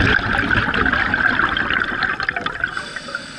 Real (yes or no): yes